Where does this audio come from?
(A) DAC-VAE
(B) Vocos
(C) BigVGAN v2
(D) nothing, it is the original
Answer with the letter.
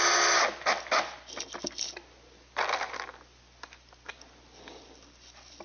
D